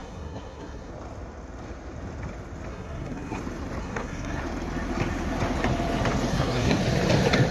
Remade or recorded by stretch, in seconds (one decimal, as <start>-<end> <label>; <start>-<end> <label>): 0.0-0.9 remade; 0.9-2.7 recorded; 2.7-3.4 remade; 3.4-3.8 recorded; 3.8-4.4 remade; 4.4-6.3 recorded; 6.3-6.8 remade; 6.8-7.5 recorded